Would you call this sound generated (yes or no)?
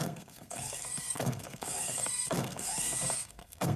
yes